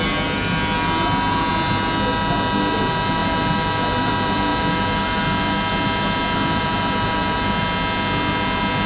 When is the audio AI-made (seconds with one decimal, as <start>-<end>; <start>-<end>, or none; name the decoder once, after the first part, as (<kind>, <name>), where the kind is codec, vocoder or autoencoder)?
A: none